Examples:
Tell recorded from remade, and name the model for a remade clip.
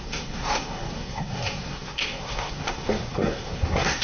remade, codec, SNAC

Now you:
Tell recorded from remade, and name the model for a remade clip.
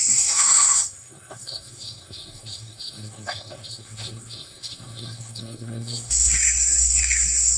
remade, codec, SNAC